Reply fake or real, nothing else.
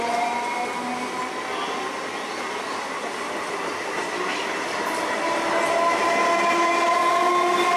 real